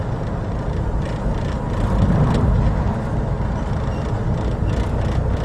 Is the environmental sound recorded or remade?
recorded